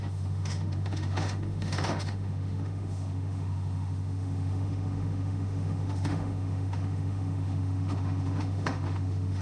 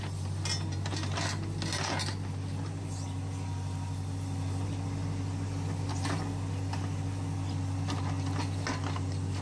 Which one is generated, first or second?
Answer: first